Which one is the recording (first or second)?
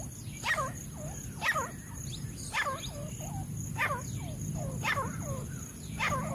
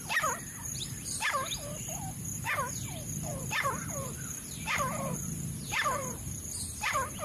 first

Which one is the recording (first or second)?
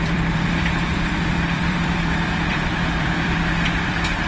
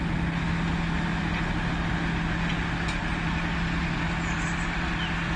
second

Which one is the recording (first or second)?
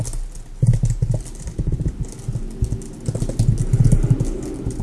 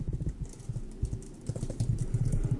first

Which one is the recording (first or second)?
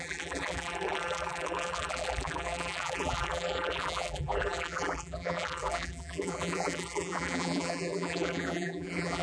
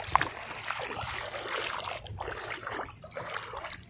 second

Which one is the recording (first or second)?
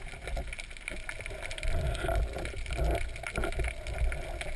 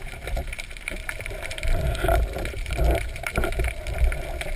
first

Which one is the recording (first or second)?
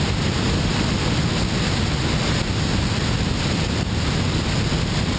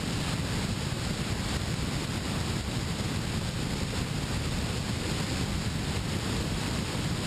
first